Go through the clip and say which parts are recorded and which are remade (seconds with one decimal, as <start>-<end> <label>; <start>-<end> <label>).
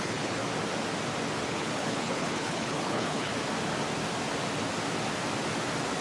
0.0-0.4 remade; 0.4-1.5 recorded; 1.5-3.3 remade; 3.3-6.0 recorded